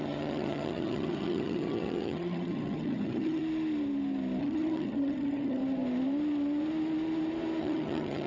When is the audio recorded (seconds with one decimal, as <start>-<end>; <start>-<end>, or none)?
3.4-4.4; 5.6-7.6